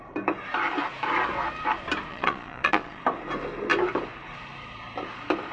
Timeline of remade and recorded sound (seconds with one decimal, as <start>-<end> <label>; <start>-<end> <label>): 0.0-2.1 recorded; 2.1-3.0 remade; 3.0-5.5 recorded